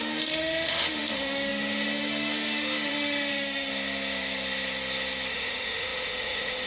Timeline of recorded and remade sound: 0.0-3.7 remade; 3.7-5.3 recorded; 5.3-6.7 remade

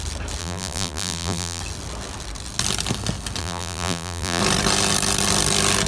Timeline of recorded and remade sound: 0.0-0.4 recorded; 0.4-1.6 remade; 1.6-3.4 recorded; 3.4-4.4 remade; 4.4-5.9 recorded